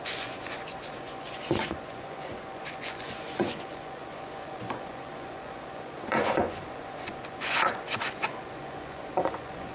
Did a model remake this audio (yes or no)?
yes